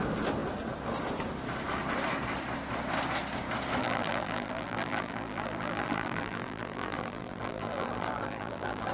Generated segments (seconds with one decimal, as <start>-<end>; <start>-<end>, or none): 3.8-8.9